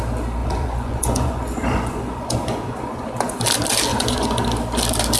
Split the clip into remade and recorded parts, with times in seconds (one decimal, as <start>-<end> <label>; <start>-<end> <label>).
0.0-0.4 recorded; 0.4-3.4 remade; 3.4-3.9 recorded; 3.9-4.4 remade; 4.4-5.2 recorded

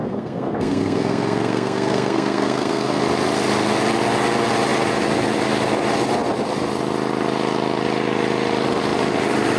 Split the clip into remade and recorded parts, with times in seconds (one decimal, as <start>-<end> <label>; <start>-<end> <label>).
0.0-3.0 remade; 3.0-9.6 recorded